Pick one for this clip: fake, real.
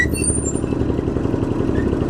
real